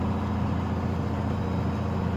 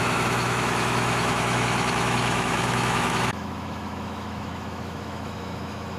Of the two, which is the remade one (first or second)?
second